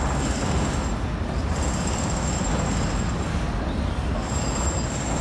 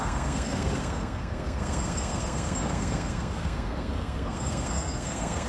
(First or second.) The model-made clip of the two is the second